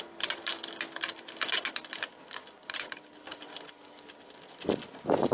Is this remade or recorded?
recorded